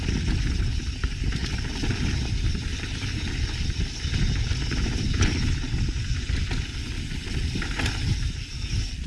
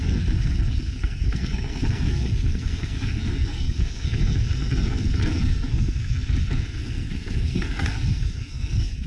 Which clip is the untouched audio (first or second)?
first